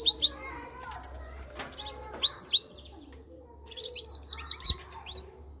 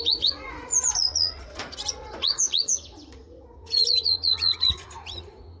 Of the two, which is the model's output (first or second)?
second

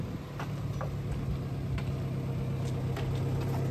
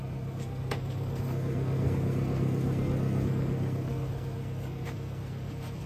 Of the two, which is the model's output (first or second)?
second